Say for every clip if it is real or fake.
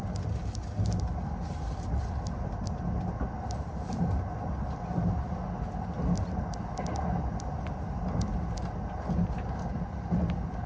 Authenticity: real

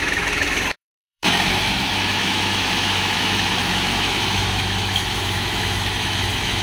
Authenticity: fake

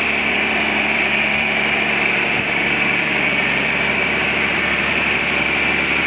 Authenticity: fake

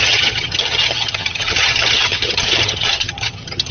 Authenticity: fake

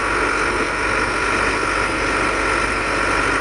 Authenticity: real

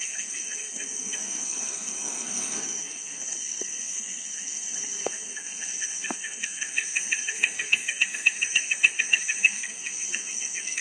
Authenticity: fake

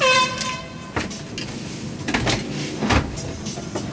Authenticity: real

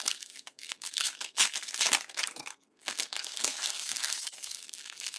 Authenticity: fake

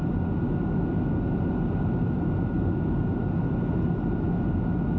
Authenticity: real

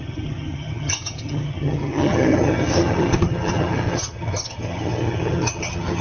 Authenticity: fake